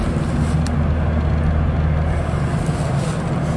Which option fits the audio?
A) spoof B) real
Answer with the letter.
B